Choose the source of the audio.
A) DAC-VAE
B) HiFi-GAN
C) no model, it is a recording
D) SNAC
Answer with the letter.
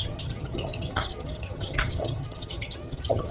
B